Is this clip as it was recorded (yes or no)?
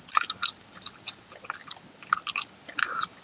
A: yes